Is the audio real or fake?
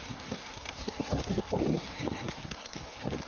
fake